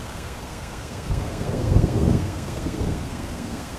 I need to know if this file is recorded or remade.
remade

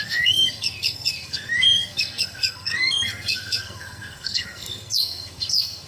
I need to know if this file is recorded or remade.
remade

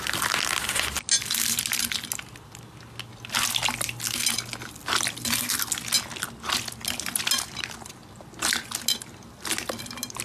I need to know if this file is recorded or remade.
recorded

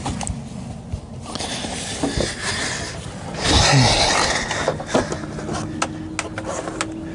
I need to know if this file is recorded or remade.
recorded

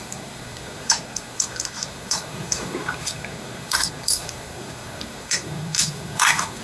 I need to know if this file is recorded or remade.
remade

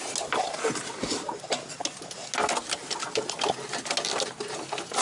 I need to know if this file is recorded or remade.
recorded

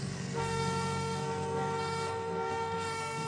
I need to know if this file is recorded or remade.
remade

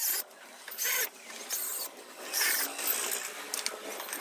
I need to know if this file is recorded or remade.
recorded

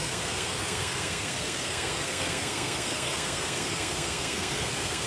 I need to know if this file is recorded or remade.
remade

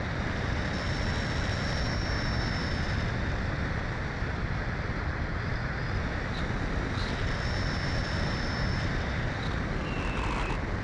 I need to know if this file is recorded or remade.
recorded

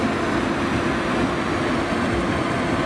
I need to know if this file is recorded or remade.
recorded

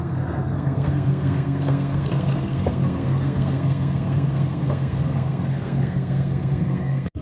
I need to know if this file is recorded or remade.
remade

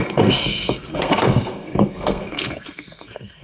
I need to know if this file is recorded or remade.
remade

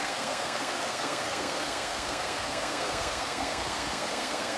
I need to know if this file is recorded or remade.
remade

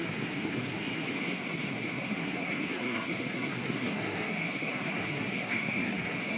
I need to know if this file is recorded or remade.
remade